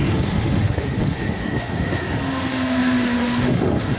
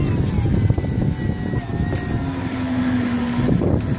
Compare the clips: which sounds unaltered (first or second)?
second